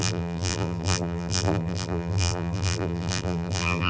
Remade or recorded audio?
remade